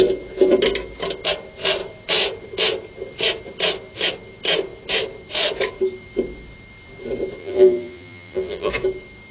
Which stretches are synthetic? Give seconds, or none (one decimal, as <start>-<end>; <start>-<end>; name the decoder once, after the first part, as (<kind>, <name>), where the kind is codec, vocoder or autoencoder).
7.4-8.7 (vocoder, BigVGAN v2)